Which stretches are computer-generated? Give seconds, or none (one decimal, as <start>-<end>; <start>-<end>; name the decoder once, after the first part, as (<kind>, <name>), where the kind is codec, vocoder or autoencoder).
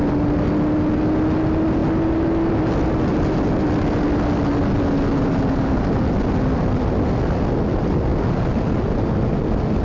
none